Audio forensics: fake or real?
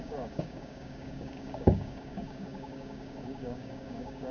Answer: fake